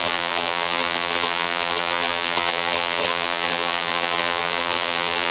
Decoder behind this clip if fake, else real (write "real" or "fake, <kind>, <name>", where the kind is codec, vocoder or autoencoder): fake, vocoder, BigVGAN v2